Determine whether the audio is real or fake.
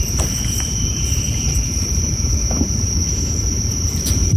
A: fake